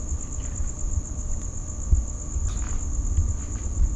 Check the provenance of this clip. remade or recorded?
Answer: recorded